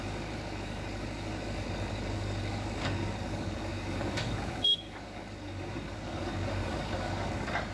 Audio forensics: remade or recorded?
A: remade